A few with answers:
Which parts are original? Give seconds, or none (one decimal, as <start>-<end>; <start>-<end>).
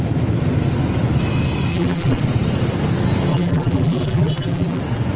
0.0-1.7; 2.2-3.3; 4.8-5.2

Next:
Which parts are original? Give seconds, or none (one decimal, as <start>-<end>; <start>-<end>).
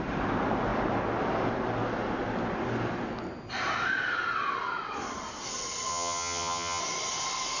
0.0-5.9; 6.8-7.6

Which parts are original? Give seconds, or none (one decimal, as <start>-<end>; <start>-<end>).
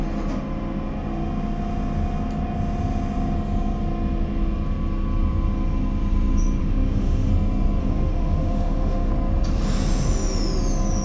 0.0-6.6; 7.3-7.8; 9.1-11.0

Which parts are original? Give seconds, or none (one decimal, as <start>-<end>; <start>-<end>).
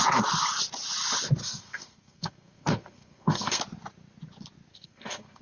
0.0-1.4; 3.6-4.7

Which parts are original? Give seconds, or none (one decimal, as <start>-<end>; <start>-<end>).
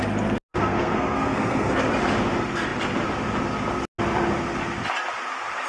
0.0-0.5; 1.8-5.7